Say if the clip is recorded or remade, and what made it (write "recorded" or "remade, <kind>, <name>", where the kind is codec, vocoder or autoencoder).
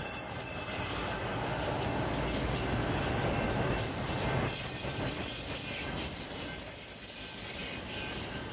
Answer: recorded